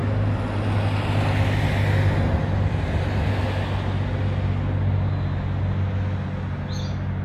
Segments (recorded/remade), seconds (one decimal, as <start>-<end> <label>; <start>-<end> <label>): 0.0-7.2 recorded